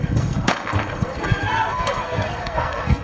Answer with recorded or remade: remade